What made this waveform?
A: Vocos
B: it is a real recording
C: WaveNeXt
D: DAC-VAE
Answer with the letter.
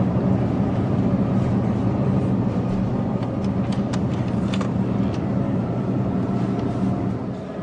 B